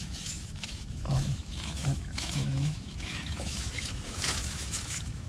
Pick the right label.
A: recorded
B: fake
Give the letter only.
B